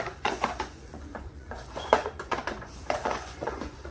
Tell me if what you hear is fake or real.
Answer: fake